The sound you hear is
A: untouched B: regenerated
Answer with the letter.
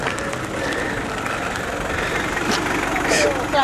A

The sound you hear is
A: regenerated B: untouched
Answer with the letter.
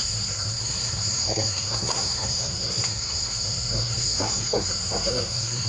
A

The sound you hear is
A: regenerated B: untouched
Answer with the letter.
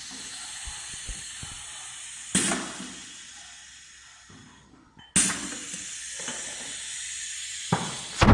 B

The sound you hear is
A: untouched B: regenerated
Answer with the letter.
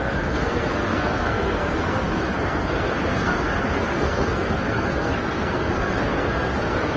B